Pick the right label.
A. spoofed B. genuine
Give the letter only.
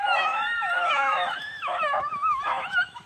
A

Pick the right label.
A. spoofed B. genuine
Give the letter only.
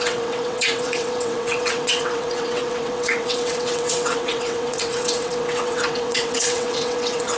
A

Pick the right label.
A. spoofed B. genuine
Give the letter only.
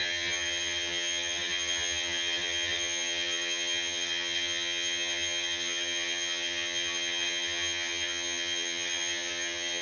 A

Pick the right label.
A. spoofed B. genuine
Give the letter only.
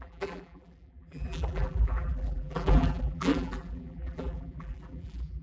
A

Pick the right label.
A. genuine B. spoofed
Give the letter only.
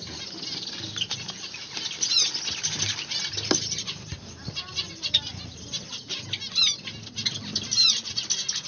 A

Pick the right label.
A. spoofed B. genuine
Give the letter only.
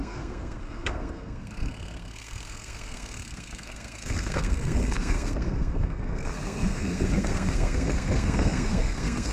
A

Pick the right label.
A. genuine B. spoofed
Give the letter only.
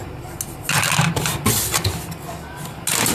A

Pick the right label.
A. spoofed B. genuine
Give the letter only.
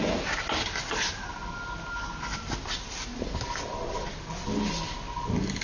B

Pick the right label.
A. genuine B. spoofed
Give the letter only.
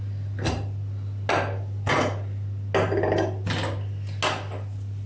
A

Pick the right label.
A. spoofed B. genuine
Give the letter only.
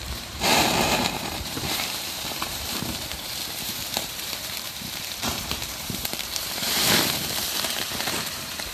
A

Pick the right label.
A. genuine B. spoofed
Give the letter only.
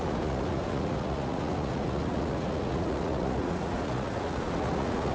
B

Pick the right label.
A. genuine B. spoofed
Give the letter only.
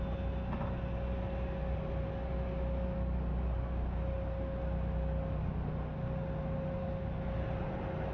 A